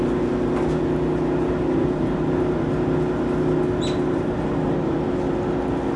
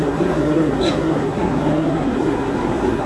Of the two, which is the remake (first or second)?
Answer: second